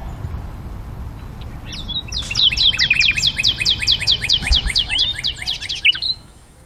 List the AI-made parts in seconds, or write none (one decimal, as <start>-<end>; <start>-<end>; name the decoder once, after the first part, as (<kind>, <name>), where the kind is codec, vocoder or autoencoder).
4.0-5.1 (autoencoder, DAC-VAE); 5.7-6.7